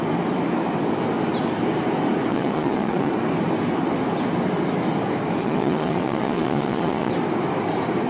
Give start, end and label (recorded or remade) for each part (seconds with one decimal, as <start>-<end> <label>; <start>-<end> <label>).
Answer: 0.0-2.3 recorded; 2.3-3.1 remade; 3.1-5.4 recorded; 5.4-7.1 remade; 7.1-8.1 recorded